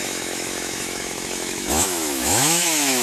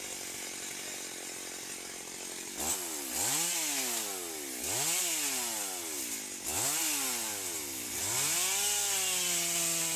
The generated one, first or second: first